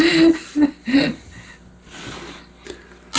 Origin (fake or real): real